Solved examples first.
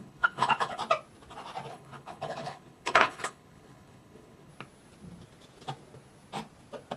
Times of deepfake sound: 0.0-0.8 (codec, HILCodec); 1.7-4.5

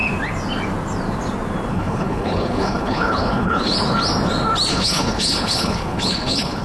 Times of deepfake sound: 1.7-3.7 (codec, HILCodec); 4.7-6.6

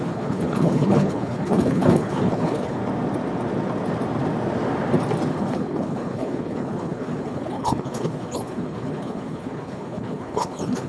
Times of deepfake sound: 0.0-2.8 (codec, HILCodec); 5.3-10.9